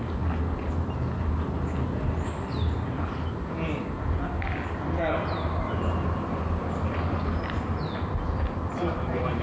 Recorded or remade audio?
recorded